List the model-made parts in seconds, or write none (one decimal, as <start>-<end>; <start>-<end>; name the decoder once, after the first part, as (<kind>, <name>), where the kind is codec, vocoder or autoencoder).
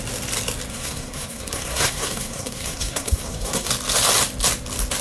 0.7-3.7 (codec, SNAC)